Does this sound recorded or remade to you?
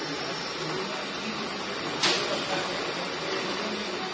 recorded